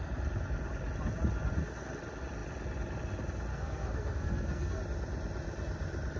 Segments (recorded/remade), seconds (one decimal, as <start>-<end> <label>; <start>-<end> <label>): 0.0-3.5 recorded; 3.5-4.8 remade; 4.8-6.2 recorded